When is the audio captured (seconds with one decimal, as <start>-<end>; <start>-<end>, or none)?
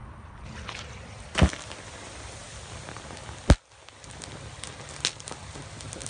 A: 0.9-6.1